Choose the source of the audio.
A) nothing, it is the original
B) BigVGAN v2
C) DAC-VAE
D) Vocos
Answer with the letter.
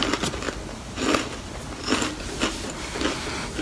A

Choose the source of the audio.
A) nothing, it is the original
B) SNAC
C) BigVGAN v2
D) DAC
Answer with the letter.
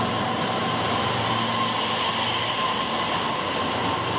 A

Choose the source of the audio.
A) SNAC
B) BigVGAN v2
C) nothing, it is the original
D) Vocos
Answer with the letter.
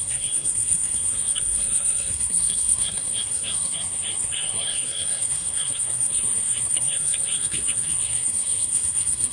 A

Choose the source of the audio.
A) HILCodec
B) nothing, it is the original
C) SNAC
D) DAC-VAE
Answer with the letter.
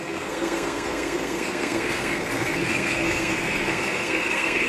C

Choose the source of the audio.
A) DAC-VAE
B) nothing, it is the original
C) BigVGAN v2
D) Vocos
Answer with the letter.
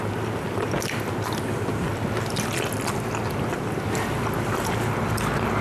B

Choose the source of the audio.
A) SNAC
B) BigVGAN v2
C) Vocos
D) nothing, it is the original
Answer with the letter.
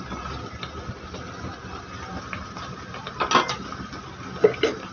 D